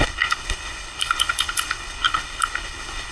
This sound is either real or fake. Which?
fake